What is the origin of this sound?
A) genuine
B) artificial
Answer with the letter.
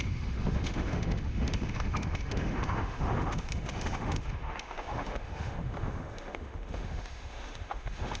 B